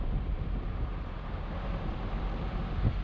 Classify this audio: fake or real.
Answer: fake